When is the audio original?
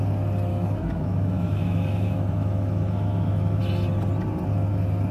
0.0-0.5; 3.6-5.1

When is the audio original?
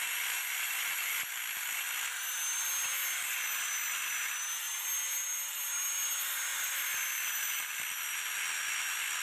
0.0-6.5; 7.7-9.2